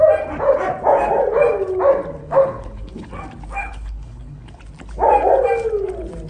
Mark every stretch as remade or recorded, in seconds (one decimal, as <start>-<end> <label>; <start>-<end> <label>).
0.0-2.2 recorded; 2.2-3.1 remade; 3.1-3.6 recorded; 3.6-4.6 remade; 4.6-6.3 recorded